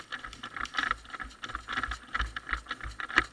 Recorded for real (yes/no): yes